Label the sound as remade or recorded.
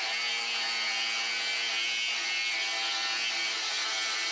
recorded